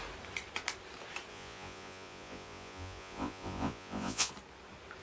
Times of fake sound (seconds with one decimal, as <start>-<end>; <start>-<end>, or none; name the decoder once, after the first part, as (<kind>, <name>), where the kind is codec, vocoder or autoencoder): 1.3-4.3 (vocoder, Vocos)